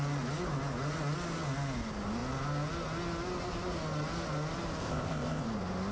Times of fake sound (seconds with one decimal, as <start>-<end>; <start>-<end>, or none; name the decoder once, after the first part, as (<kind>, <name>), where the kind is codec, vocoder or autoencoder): 4.8-5.4 (codec, ZipCodec)